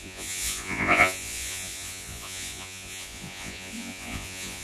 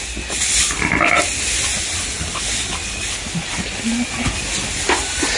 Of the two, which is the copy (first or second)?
first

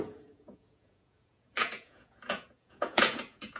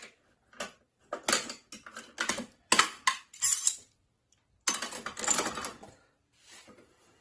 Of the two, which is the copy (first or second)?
first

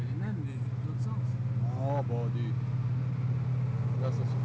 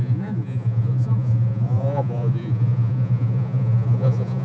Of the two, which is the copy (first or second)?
second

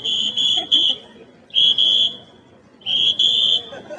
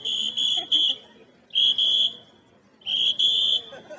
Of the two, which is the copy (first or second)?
first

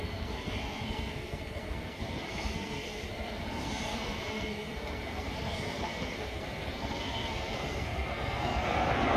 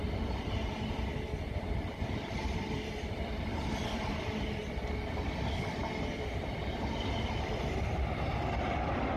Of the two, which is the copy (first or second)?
first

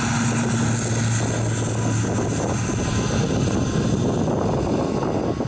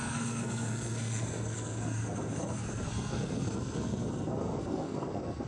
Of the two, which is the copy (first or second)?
second